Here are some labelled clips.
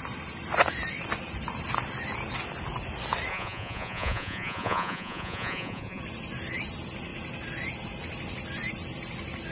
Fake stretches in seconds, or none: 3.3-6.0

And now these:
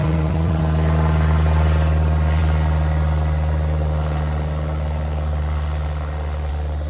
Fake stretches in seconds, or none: 0.0-0.6

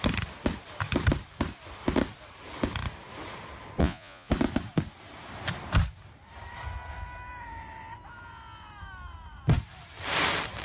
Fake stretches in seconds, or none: 3.8-4.3

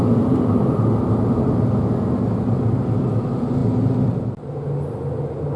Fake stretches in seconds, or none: none

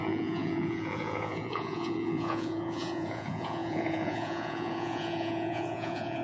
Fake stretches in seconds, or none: 0.0-6.2